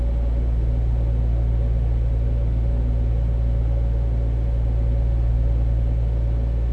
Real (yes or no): yes